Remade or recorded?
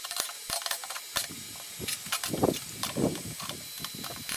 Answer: recorded